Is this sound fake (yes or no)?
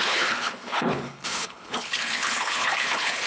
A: yes